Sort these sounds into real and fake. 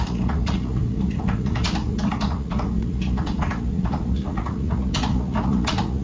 fake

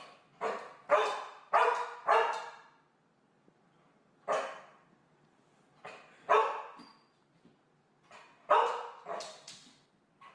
real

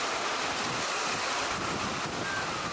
real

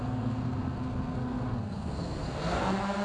fake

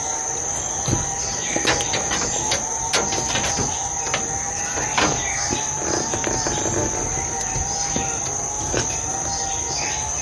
real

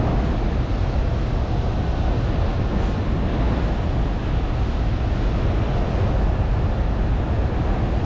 real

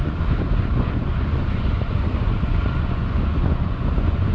fake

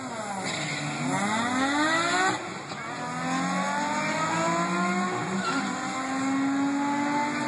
real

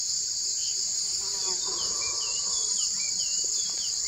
real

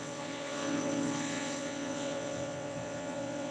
fake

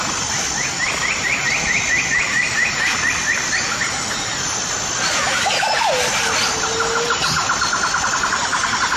real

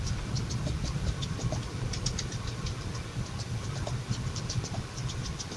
real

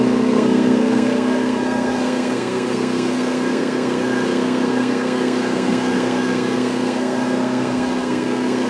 fake